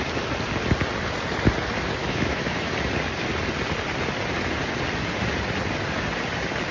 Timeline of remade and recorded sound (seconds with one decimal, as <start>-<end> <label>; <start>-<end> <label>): 0.0-2.0 recorded; 2.0-2.7 remade; 2.7-6.7 recorded